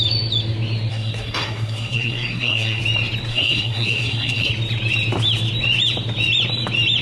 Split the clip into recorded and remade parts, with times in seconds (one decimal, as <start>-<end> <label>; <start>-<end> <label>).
0.0-0.9 recorded; 0.9-2.8 remade; 2.8-3.3 recorded; 3.3-4.5 remade; 4.5-7.0 recorded